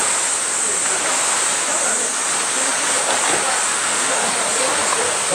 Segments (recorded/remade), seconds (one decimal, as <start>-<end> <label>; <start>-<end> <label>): 0.0-3.7 recorded; 3.7-4.3 remade; 4.3-5.3 recorded